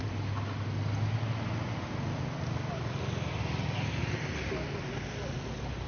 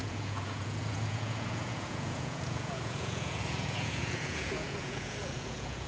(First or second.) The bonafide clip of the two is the first